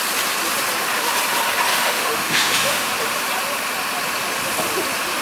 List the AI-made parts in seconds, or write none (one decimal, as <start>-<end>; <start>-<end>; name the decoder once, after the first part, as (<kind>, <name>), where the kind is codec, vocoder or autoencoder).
1.7-2.9 (autoencoder, DAC-VAE)